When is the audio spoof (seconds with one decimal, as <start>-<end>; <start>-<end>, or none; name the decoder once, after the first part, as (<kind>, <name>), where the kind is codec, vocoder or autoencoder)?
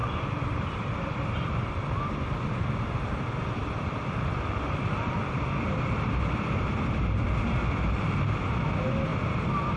0.0-2.0 (vocoder, BigVGAN v2); 3.6-7.4